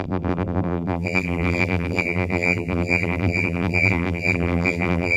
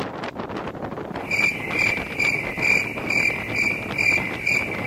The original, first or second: second